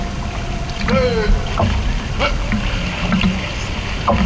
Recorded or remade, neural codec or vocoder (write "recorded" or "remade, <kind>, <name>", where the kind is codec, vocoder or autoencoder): recorded